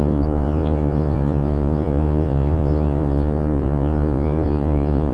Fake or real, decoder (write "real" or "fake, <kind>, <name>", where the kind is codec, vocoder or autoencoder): fake, vocoder, Vocos